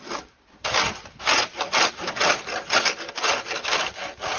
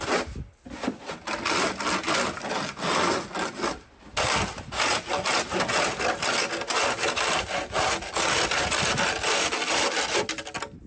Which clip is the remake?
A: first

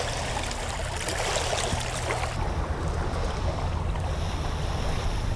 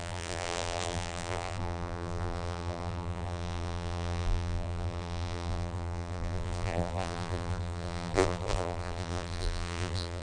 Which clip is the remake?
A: second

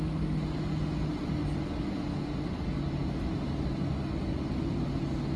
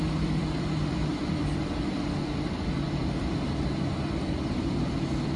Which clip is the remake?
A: second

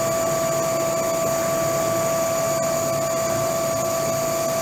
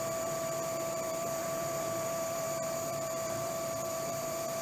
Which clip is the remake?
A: second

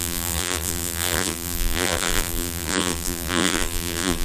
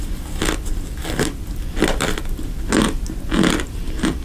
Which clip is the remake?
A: first